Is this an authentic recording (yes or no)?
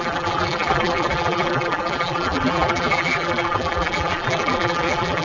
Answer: no